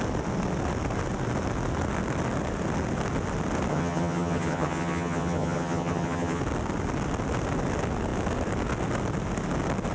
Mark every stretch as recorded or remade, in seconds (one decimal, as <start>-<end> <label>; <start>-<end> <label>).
0.0-3.7 recorded; 3.7-6.4 remade; 6.4-9.9 recorded